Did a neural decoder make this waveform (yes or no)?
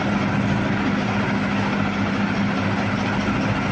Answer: no